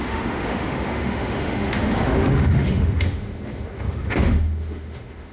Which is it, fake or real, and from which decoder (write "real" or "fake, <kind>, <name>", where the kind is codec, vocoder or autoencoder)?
fake, autoencoder, DAC-VAE